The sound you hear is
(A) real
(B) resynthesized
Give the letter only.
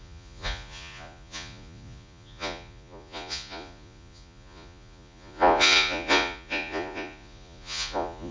B